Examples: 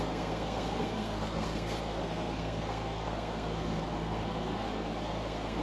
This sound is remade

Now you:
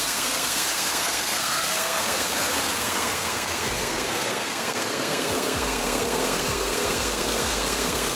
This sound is remade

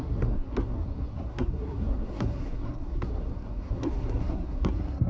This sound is remade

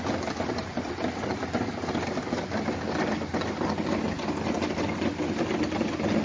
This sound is recorded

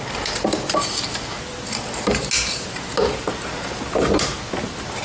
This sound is recorded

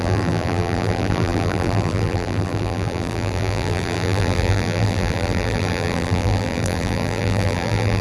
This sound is remade